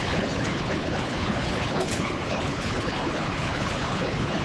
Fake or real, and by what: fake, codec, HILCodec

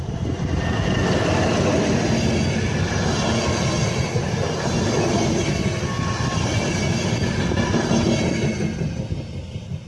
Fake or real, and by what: real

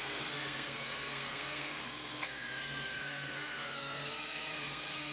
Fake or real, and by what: fake, codec, SNAC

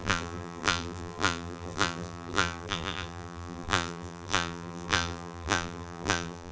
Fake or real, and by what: fake, vocoder, BigVGAN v2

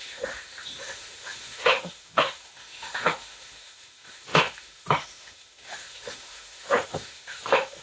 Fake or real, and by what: fake, autoencoder, DAC-VAE